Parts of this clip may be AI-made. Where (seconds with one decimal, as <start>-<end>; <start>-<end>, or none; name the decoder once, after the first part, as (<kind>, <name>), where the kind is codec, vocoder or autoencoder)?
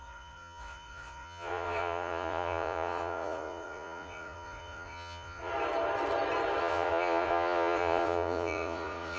0.0-5.5 (vocoder, Vocos); 6.6-9.2